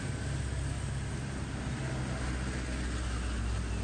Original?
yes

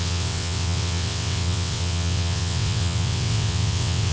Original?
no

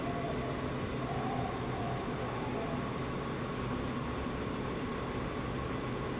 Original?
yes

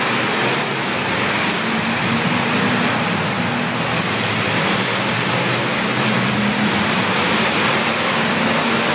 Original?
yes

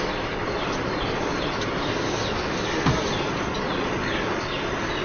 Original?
yes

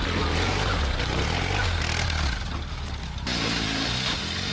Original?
yes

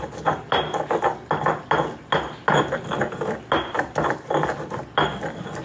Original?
yes